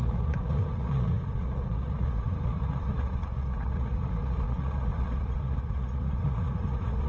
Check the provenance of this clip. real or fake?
fake